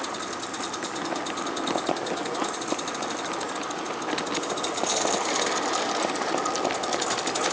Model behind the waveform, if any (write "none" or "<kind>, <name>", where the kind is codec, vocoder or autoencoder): none